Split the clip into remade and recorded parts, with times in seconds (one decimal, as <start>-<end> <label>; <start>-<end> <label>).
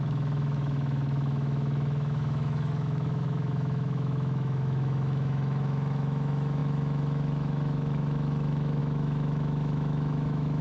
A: 0.0-10.6 remade